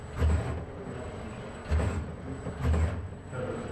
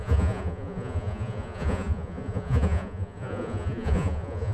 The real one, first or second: first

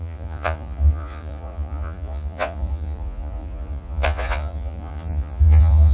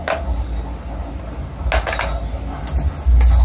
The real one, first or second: second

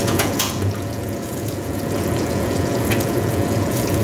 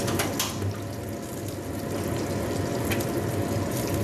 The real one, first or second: second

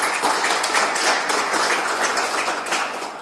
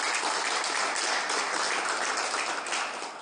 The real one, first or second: second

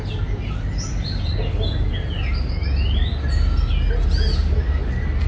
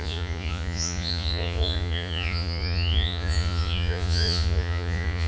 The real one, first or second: first